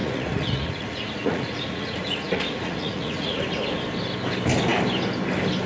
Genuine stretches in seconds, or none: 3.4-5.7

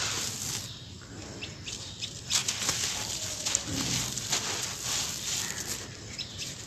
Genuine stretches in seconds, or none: 0.0-6.7

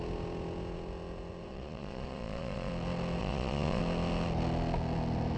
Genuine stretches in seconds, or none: 0.0-1.5; 2.7-3.2; 3.8-5.4

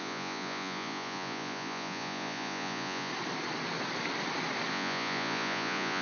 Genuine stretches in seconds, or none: 3.1-4.7

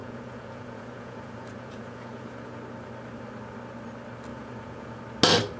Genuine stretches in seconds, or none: 2.5-4.3; 5.0-5.6